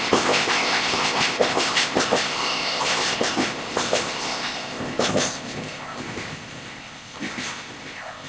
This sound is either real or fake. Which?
fake